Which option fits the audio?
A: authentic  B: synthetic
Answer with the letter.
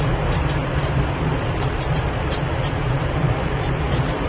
B